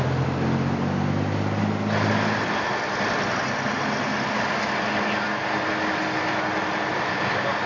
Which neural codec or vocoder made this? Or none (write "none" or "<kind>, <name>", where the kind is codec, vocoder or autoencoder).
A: none